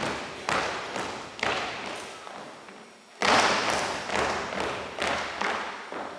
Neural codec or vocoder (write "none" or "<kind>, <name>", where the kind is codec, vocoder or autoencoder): none